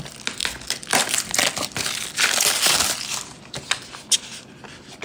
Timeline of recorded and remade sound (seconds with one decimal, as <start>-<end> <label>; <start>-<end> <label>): 0.0-5.0 recorded